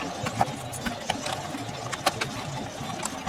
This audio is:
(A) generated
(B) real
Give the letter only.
B